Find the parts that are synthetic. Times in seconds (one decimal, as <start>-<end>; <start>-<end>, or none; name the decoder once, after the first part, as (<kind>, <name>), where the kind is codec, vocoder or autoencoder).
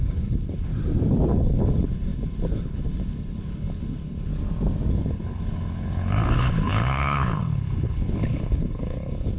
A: 0.0-0.7 (codec, HILCodec); 1.3-4.3; 4.9-9.4